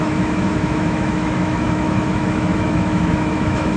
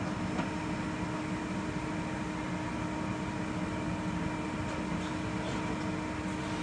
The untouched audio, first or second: second